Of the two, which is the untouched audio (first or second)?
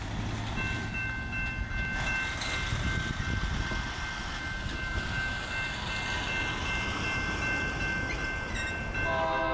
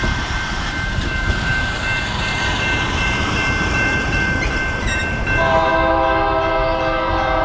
first